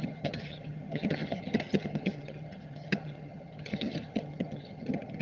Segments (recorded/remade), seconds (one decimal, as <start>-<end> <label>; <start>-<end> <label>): 0.0-5.2 remade